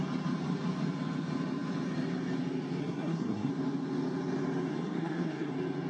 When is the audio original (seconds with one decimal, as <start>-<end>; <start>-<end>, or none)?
0.0-2.8; 3.5-4.7; 5.5-5.9